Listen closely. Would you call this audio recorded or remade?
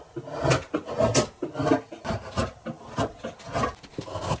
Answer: recorded